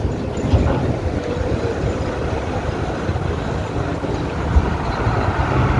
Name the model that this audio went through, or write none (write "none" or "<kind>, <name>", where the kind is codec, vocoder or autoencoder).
none